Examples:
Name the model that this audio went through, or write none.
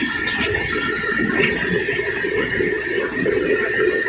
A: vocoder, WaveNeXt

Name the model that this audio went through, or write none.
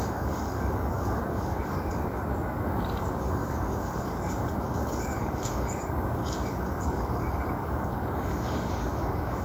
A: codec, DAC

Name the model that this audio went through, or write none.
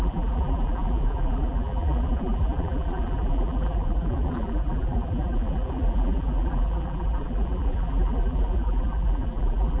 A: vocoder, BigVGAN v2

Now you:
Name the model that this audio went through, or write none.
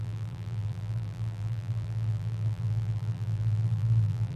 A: vocoder, BigVGAN v2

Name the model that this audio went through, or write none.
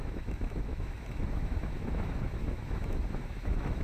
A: autoencoder, DAC-VAE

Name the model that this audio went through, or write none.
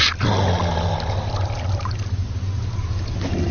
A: none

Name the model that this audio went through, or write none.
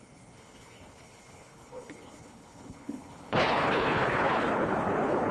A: codec, HILCodec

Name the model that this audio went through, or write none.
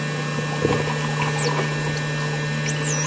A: none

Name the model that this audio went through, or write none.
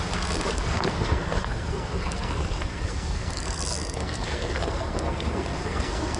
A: codec, SNAC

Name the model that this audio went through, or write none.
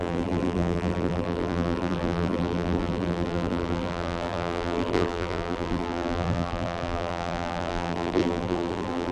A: vocoder, BigVGAN v2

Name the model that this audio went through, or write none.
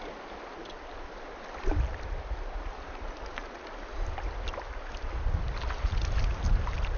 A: none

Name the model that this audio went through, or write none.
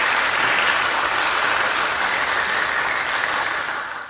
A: none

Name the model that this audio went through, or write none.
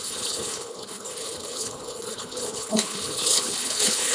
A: codec, HILCodec